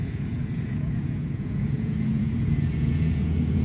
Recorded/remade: remade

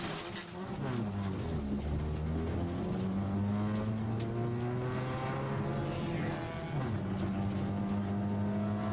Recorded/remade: recorded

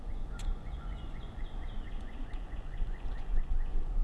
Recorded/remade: remade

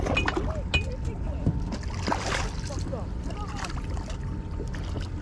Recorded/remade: recorded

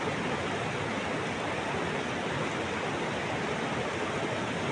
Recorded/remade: recorded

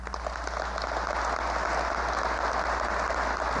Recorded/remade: recorded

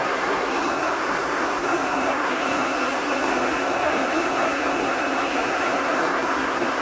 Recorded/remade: remade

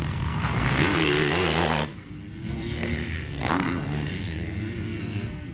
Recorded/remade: remade